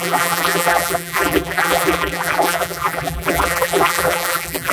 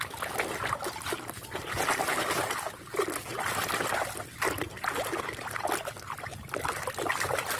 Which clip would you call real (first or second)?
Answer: second